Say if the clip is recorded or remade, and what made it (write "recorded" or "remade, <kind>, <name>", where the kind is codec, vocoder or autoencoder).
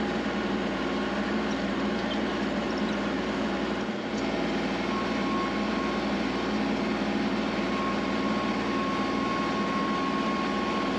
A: recorded